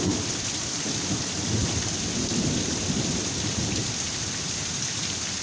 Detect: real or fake fake